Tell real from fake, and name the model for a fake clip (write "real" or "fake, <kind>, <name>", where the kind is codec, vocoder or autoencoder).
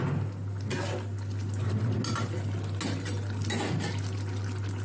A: real